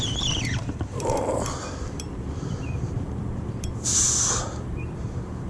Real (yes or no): no